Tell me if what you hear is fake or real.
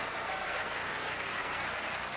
fake